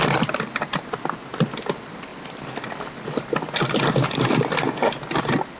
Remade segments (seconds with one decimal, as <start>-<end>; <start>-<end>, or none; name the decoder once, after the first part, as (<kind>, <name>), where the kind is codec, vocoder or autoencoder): none